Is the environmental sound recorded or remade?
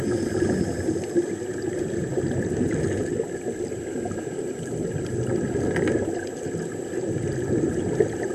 recorded